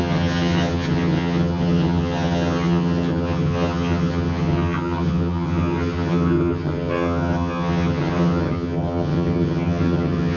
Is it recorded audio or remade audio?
remade